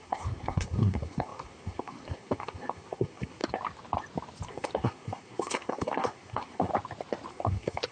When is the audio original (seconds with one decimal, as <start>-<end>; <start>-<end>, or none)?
3.4-4.5; 6.7-7.3